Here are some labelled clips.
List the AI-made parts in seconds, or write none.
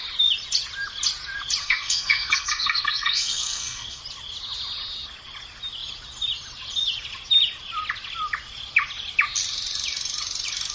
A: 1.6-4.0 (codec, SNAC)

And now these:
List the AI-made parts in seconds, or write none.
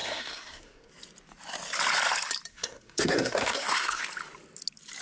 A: 0.0-0.9 (codec, SNAC); 2.5-4.0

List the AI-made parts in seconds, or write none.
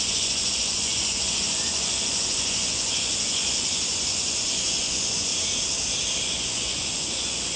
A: 0.0-5.3 (vocoder, Vocos); 6.2-7.6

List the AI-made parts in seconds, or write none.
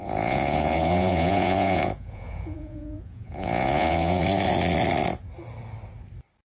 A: 0.0-4.2 (vocoder, Vocos)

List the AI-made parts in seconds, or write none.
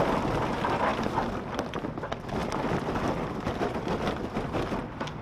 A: none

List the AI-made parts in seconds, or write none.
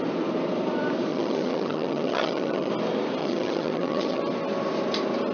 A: 1.1-2.7 (vocoder, HiFi-GAN); 3.2-4.2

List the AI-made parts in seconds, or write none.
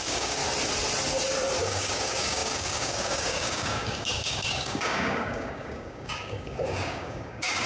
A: 0.0-0.4 (codec, DAC); 1.6-7.7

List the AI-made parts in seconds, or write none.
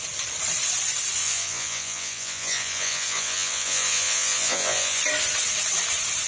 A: 1.2-5.0 (vocoder, Vocos)